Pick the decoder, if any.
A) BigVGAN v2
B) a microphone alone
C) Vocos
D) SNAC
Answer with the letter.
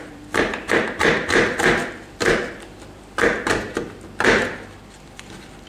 A